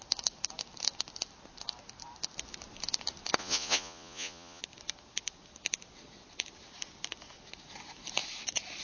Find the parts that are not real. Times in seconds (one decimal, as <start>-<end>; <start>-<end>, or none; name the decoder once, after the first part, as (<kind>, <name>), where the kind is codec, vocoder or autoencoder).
3.4-4.6 (vocoder, Vocos)